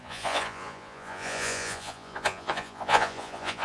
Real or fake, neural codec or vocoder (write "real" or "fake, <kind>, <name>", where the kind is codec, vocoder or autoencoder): fake, vocoder, Vocos